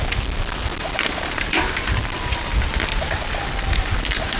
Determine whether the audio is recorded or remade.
remade